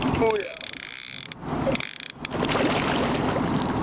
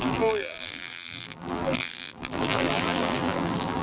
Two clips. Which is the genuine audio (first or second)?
first